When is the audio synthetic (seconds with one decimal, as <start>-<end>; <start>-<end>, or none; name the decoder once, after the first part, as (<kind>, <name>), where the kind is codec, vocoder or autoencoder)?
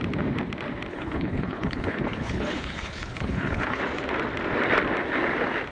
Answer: 0.9-3.8 (codec, HILCodec)